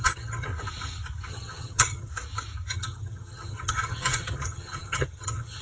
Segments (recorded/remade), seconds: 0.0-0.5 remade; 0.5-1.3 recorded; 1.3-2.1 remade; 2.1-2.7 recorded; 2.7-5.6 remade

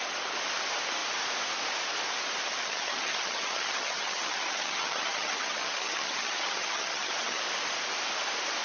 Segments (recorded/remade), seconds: 0.0-2.6 recorded; 2.6-7.4 remade; 7.4-8.6 recorded

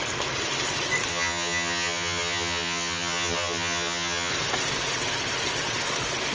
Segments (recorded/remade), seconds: 0.0-1.1 recorded; 1.1-4.3 remade; 4.3-6.3 recorded

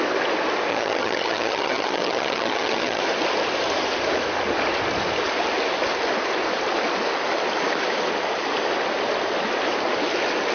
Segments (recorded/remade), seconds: 0.0-0.7 recorded; 0.7-3.0 remade; 3.0-10.5 recorded

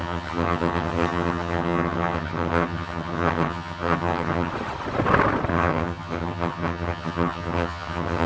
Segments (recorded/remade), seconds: 0.0-4.5 remade; 4.5-5.5 recorded; 5.5-8.3 remade

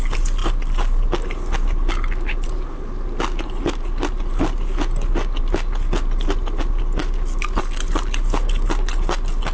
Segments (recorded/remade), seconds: 0.0-9.5 recorded